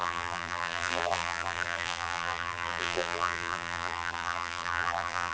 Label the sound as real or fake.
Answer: fake